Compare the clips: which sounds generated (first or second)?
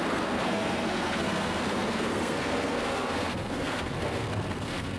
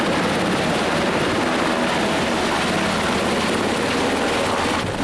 first